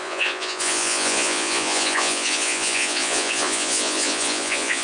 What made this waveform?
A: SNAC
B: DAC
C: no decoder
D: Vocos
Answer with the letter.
D